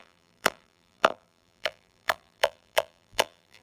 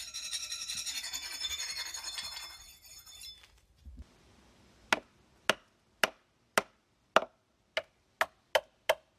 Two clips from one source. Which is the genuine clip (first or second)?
second